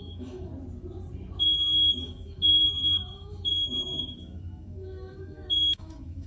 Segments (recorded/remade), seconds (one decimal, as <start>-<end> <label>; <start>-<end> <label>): 0.0-0.5 remade; 0.5-1.4 recorded; 1.4-6.3 remade